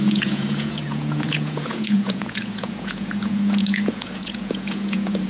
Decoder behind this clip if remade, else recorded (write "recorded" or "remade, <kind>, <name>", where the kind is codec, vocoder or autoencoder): remade, vocoder, Vocos